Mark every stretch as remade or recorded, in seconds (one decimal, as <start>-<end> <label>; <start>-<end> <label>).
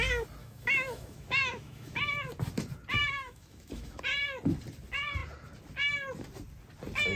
0.0-0.4 recorded; 0.4-2.0 remade; 2.0-3.0 recorded; 3.0-4.0 remade; 4.0-7.2 recorded